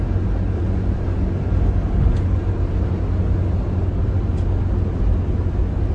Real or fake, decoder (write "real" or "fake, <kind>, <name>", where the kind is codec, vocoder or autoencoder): real